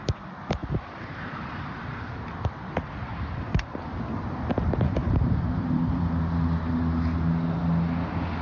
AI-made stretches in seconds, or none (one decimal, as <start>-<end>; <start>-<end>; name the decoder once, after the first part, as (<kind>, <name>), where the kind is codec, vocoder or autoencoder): 0.6-2.3 (vocoder, BigVGAN v2); 3.1-3.9; 5.0-6.2